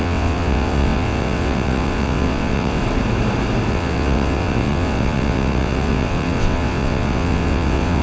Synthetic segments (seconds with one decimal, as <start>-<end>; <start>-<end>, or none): 0.0-2.8; 3.7-8.0